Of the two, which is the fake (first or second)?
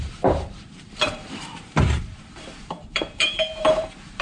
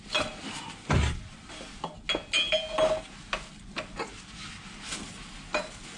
first